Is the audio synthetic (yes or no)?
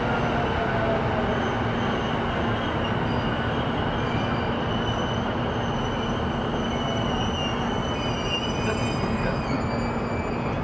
no